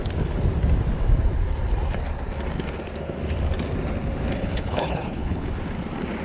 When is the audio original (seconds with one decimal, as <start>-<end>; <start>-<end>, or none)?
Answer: 0.0-4.4; 5.5-6.2